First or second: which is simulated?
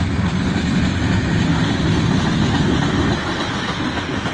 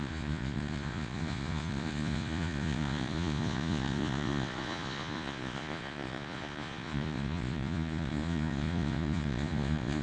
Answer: second